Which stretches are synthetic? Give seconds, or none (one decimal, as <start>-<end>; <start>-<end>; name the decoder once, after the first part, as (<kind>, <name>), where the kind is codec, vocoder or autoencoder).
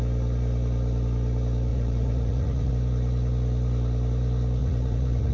1.7-2.7 (vocoder, Vocos); 4.6-5.3